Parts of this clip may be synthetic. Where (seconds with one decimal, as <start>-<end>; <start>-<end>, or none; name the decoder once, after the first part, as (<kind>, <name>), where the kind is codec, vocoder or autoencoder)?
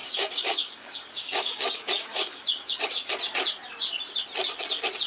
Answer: 0.0-3.1 (codec, DAC)